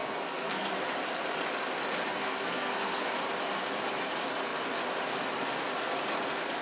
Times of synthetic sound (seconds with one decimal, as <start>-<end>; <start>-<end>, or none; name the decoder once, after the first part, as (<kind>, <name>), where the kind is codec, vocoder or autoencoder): 0.0-0.7 (codec, SNAC); 2.1-3.1

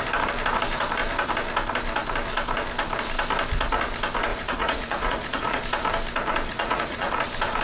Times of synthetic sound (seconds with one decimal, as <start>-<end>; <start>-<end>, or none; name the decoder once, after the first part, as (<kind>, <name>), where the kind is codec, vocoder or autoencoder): 4.3-5.6 (vocoder, Vocos); 6.5-7.1

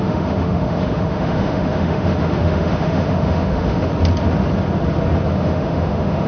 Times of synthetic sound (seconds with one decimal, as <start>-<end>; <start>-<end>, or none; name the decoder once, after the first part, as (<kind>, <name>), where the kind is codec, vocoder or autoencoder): 0.0-3.9 (autoencoder, DAC-VAE); 5.3-6.3

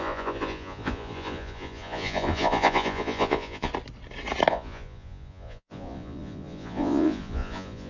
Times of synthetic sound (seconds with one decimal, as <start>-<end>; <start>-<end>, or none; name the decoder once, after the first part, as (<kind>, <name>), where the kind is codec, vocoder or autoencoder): 0.0-3.7 (vocoder, Vocos); 4.5-7.9

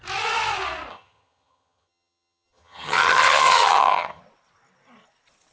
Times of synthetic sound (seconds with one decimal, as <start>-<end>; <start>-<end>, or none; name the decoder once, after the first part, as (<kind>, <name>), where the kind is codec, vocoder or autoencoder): 0.9-4.2 (vocoder, HiFi-GAN)